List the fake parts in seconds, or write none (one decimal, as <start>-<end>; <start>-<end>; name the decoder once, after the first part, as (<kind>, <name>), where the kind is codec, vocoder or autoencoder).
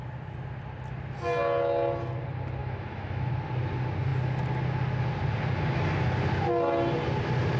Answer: 2.6-3.3 (autoencoder, DAC-VAE)